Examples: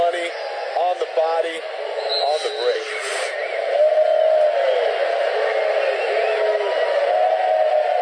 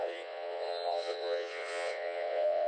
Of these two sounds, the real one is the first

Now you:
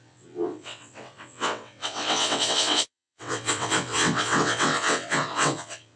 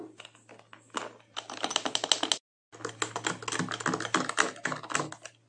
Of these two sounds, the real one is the second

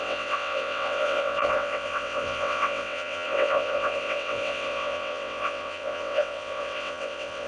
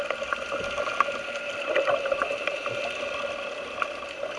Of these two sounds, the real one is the second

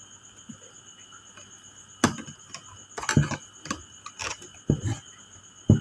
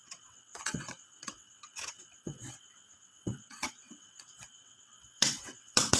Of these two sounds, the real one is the first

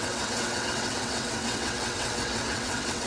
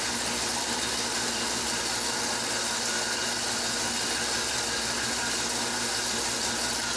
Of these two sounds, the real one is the second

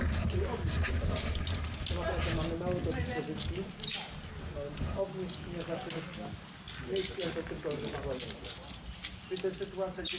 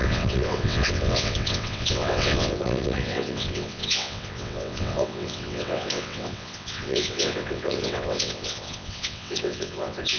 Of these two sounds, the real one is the first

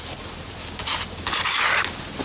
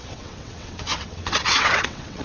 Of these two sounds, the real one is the first